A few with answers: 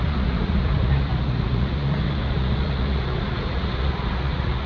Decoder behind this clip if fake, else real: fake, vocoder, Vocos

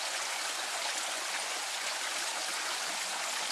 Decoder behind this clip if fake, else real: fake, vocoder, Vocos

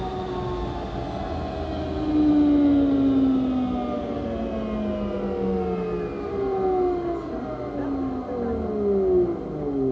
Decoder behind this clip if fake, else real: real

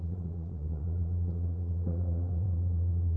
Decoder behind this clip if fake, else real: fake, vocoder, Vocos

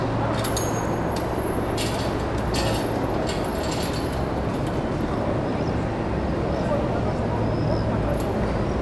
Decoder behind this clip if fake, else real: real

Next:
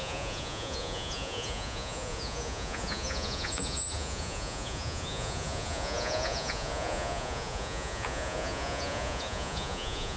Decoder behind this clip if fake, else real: fake, vocoder, Vocos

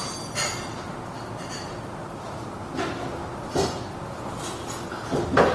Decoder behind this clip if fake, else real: real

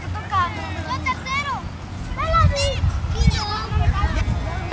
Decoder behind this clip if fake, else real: real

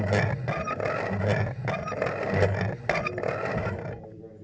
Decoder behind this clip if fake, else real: real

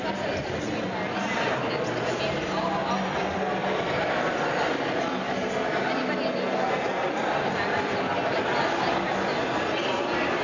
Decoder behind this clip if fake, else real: real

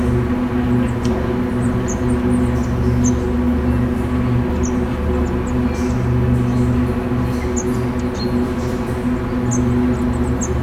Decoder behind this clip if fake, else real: real